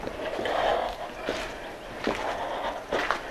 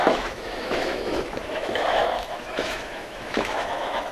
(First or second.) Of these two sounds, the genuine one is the first